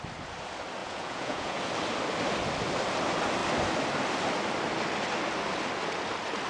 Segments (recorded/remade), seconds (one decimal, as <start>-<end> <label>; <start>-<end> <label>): 0.0-0.8 recorded; 0.8-1.6 remade; 1.6-6.5 recorded